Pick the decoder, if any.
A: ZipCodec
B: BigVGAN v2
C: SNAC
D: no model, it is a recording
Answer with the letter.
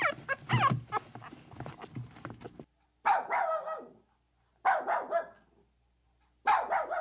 D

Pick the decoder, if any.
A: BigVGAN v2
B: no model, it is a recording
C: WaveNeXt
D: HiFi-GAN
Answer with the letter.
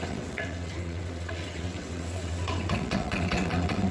C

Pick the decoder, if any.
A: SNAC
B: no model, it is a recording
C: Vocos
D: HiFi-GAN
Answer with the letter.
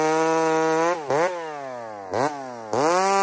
B